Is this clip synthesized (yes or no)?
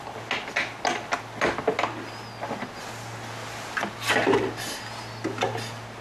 no